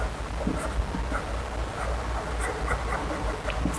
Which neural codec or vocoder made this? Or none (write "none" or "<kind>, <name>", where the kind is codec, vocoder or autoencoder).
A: none